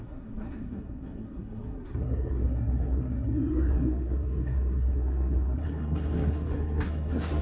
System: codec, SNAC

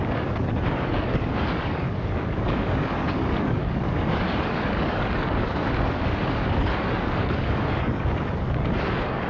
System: codec, DAC